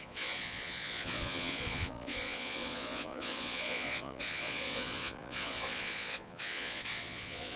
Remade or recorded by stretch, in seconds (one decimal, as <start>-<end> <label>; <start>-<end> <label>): 0.0-7.6 remade